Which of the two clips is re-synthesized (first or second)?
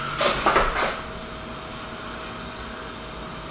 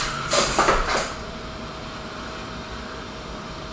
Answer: second